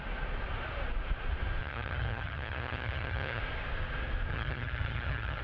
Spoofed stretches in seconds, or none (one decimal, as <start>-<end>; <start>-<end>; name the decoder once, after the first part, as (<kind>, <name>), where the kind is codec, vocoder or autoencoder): 1.6-3.4 (vocoder, HiFi-GAN); 4.3-5.4